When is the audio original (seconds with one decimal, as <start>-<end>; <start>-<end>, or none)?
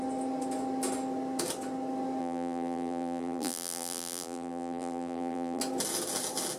0.0-2.2; 5.6-6.6